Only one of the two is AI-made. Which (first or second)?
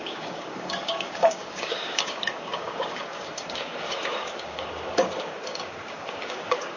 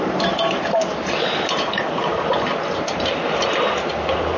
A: first